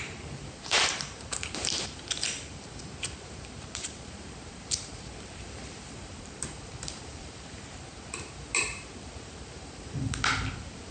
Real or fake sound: fake